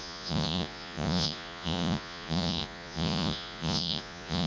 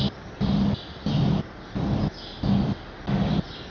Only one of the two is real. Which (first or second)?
second